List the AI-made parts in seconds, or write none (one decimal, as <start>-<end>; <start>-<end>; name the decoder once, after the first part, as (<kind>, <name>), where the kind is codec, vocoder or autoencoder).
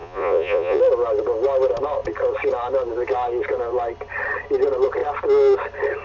0.0-0.8 (vocoder, Vocos)